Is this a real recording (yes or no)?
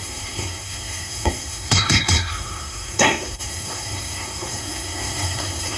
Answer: no